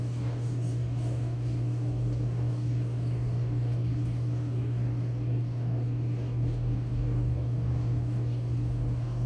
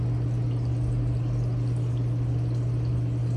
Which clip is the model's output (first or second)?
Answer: first